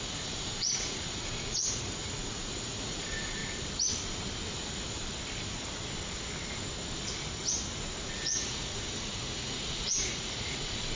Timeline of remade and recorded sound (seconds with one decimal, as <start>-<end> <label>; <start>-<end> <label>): 0.0-3.4 remade; 3.4-7.7 recorded; 7.7-10.9 remade